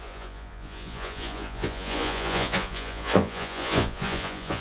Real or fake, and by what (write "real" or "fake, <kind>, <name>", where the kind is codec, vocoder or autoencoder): fake, vocoder, Vocos